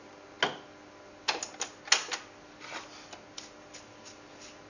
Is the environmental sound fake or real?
real